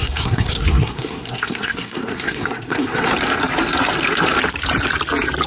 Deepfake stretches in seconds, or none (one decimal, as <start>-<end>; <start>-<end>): 0.0-3.1